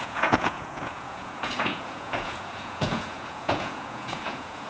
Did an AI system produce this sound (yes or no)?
yes